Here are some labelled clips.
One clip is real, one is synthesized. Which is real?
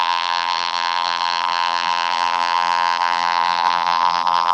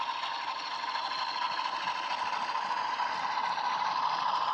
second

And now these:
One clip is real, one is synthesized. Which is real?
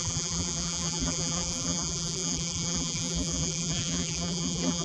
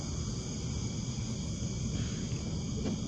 second